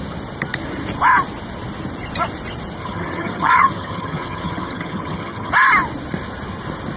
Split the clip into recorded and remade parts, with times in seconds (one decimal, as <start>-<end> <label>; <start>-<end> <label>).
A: 0.0-2.8 recorded; 2.8-5.5 remade; 5.5-7.0 recorded